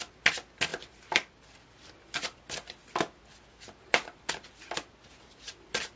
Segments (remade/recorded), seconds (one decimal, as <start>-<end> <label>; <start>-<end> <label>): 0.0-6.0 recorded